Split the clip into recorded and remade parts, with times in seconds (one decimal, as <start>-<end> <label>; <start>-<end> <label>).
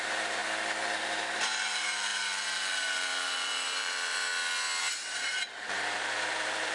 0.0-0.4 remade; 0.4-1.0 recorded; 1.0-4.3 remade; 4.3-4.8 recorded; 4.8-6.7 remade